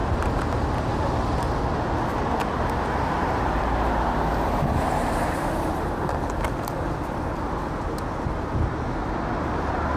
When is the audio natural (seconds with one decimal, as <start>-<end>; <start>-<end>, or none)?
0.0-10.0

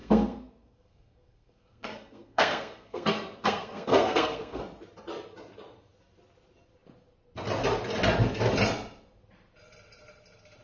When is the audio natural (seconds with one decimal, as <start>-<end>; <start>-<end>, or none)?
4.6-10.6

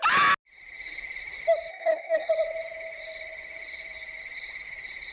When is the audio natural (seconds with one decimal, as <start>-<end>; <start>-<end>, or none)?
0.0-1.7; 2.3-5.1

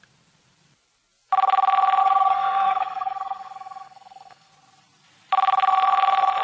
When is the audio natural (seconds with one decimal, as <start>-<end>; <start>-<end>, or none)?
0.0-2.0; 4.5-6.4

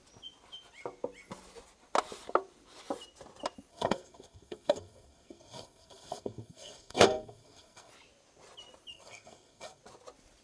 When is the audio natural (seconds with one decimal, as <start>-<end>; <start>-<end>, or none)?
0.0-3.7; 7.9-8.9; 9.8-10.4

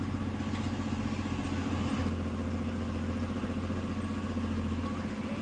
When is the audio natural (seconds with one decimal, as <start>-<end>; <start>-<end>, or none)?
0.0-5.4

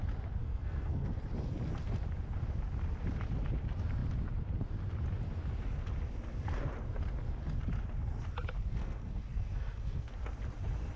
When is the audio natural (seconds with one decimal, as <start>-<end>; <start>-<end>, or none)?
0.0-0.4; 1.2-8.7; 10.1-11.0

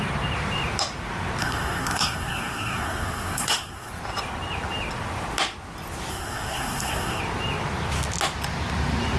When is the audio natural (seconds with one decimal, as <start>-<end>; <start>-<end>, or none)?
0.0-1.4; 3.9-6.1; 7.2-9.2